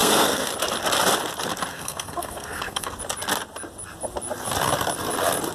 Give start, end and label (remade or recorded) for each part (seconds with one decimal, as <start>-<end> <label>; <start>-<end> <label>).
0.0-0.5 remade; 0.5-1.7 recorded; 1.7-3.0 remade; 3.0-5.5 recorded